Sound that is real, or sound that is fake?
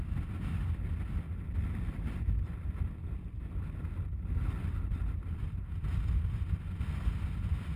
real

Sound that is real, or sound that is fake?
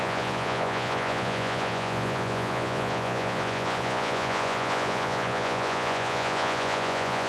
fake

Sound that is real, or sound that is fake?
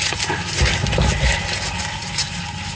real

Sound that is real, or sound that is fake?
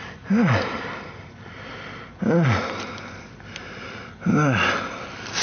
real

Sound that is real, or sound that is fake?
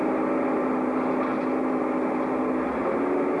real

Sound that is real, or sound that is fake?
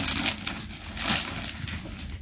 real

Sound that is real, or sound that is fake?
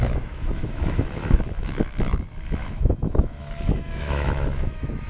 fake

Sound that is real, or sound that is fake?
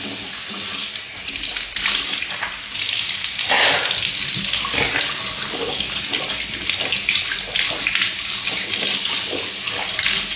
real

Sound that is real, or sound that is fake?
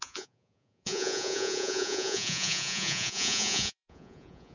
fake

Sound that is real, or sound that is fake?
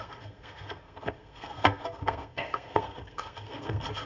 fake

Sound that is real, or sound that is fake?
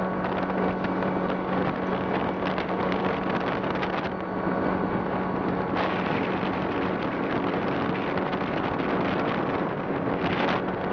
real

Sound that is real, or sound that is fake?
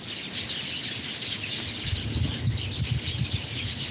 real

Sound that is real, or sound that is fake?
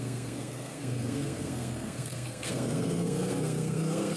fake